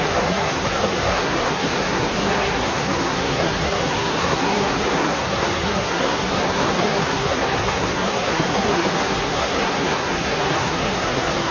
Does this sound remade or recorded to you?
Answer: remade